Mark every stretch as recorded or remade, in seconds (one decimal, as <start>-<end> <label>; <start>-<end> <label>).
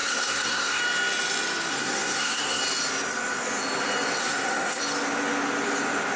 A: 0.0-0.8 remade; 0.8-1.7 recorded; 1.7-2.6 remade; 2.6-4.2 recorded; 4.2-4.8 remade; 4.8-6.2 recorded